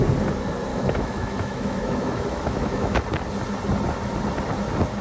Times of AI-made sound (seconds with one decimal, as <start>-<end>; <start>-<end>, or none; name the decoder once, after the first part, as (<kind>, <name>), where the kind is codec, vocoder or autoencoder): 0.7-3.0 (autoencoder, DAC-VAE)